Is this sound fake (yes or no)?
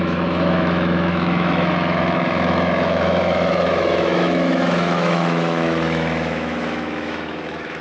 yes